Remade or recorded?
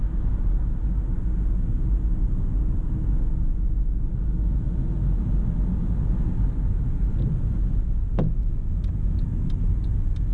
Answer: recorded